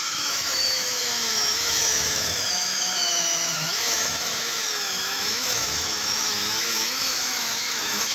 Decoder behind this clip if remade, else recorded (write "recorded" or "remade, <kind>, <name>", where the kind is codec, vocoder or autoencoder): remade, autoencoder, DAC-VAE